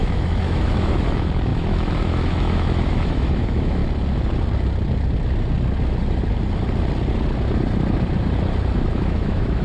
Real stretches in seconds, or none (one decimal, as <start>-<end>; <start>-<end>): 3.8-8.9